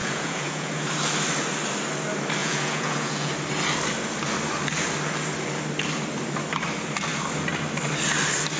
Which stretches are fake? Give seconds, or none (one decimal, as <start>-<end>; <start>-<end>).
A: 0.0-0.7; 2.4-3.3